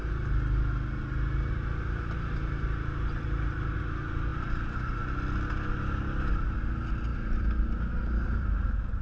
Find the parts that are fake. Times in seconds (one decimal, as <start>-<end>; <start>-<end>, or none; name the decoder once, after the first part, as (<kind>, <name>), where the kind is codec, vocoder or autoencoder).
4.3-5.0 (vocoder, BigVGAN v2); 7.1-9.0